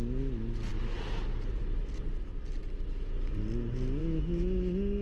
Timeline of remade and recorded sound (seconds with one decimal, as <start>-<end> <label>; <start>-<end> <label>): 0.0-4.0 recorded; 4.0-5.0 remade